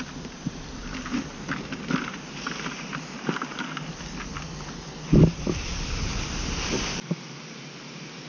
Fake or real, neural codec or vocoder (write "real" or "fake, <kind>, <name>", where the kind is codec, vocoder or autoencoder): real